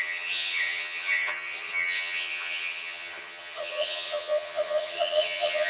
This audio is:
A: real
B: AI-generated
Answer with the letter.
B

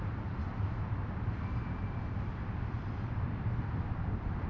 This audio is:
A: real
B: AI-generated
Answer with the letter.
A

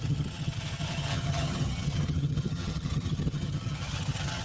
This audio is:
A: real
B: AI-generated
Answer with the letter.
B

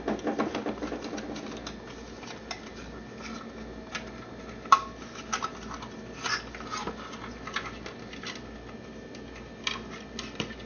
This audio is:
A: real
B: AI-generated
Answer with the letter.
A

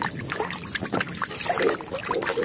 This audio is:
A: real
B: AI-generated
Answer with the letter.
A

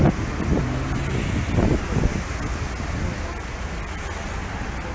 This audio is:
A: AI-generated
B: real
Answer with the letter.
B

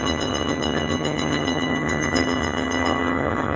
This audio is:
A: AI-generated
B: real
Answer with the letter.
A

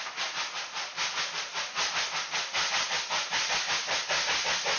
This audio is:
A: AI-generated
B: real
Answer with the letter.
B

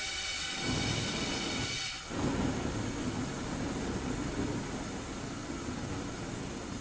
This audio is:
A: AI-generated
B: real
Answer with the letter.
B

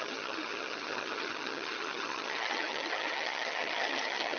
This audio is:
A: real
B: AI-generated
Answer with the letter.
B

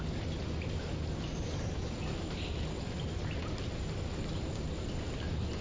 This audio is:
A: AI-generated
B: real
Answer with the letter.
B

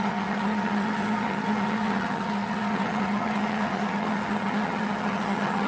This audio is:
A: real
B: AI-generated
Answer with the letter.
B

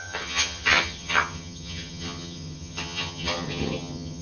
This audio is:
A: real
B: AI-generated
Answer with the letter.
B